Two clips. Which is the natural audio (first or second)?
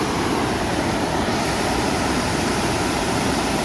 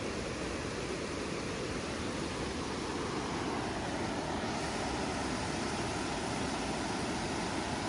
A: second